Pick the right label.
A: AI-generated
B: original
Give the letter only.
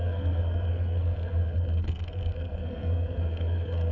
A